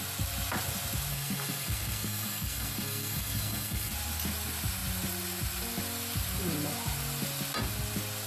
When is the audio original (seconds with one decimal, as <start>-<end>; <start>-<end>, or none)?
0.0-1.1; 3.9-8.3